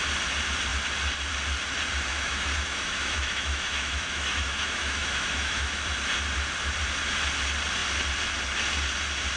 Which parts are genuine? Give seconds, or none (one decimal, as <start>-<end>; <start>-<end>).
0.0-2.1; 5.8-9.4